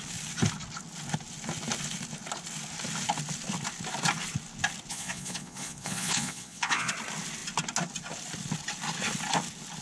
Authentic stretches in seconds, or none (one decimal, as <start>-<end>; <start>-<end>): 0.0-4.9; 6.9-9.8